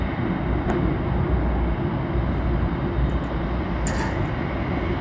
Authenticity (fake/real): real